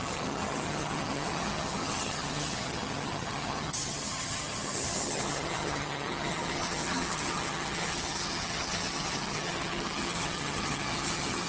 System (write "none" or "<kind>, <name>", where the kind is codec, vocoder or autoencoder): vocoder, HiFi-GAN